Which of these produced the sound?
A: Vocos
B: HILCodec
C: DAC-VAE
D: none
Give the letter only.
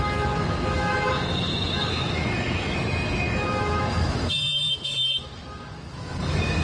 C